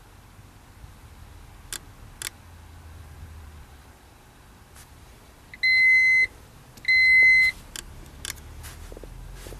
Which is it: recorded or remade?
recorded